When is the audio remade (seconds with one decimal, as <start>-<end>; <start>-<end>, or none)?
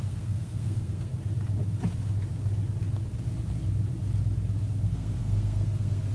0.0-1.1; 4.8-6.1